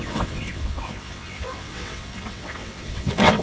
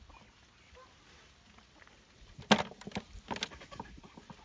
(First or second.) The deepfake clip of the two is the first